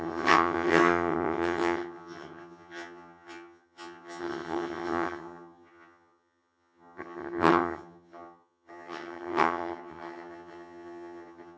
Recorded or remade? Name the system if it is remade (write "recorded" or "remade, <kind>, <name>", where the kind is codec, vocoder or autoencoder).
remade, vocoder, HiFi-GAN